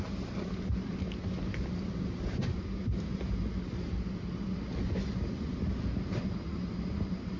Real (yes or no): yes